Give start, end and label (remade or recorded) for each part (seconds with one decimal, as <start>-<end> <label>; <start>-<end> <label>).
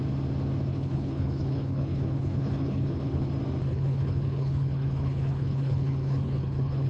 0.0-0.7 recorded; 0.7-3.3 remade; 3.3-3.7 recorded; 3.7-6.9 remade